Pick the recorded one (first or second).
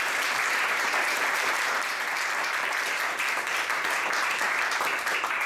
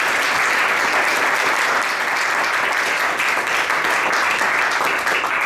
second